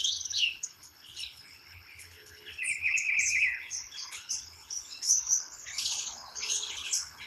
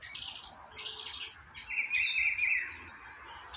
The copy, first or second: first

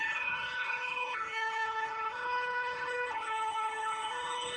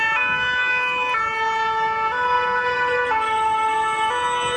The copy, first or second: first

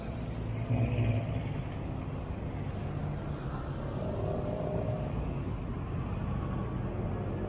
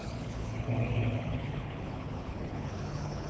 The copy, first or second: second